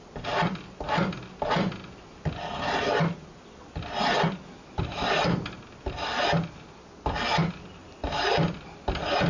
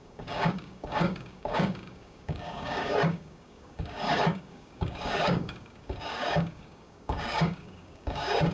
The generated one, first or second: second